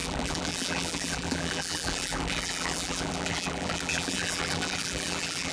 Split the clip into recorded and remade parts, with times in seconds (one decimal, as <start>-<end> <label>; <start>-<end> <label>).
0.0-5.5 remade